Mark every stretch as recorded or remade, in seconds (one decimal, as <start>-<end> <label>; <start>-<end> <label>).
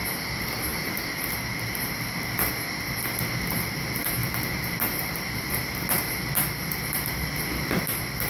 0.0-0.7 recorded; 0.7-2.4 remade; 2.4-4.2 recorded; 4.2-7.3 remade; 7.3-8.3 recorded